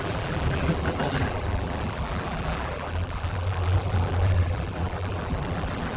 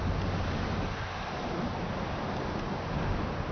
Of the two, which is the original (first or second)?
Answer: second